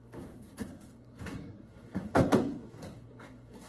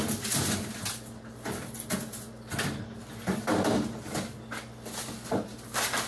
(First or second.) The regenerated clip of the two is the first